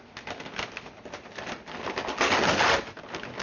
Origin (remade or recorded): recorded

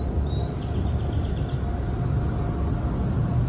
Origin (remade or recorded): recorded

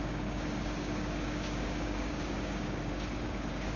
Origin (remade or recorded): remade